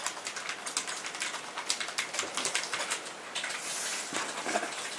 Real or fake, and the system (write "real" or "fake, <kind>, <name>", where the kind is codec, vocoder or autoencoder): real